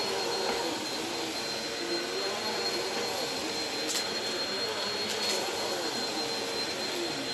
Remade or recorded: recorded